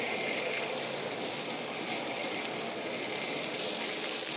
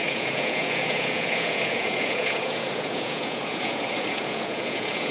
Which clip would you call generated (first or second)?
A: second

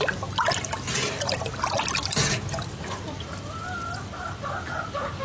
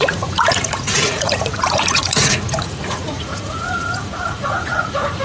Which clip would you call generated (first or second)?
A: second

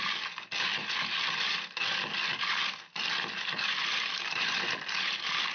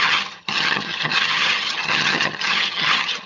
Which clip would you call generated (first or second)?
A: second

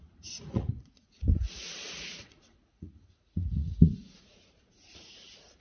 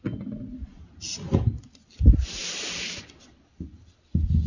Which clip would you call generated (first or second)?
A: first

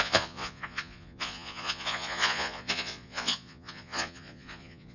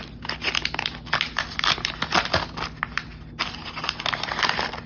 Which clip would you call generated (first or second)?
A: first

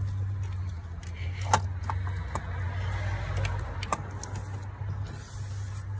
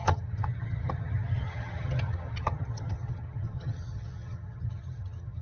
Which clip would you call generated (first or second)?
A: second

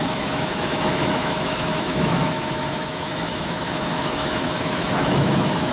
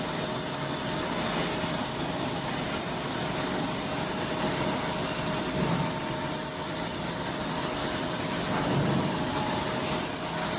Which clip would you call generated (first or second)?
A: first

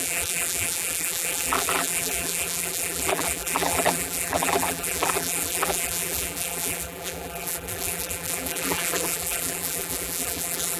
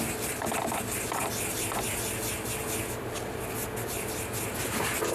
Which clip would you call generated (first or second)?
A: first